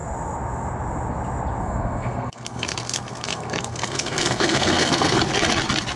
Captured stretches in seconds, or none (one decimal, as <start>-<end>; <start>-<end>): 0.0-1.6; 5.2-6.0